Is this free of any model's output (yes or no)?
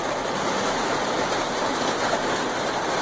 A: yes